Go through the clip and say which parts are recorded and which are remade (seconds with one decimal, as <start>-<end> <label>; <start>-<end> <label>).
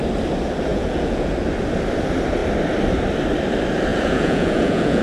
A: 0.0-0.7 recorded; 0.7-1.3 remade; 1.3-3.9 recorded; 3.9-5.0 remade